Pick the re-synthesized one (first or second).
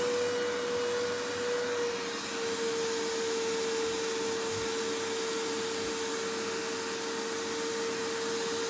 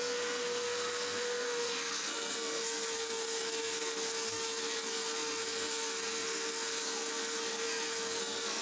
second